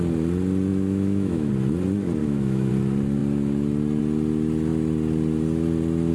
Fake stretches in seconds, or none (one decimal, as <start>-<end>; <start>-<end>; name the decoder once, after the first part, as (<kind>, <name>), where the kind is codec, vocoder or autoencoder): 0.7-1.5 (autoencoder, DAC-VAE); 2.2-2.7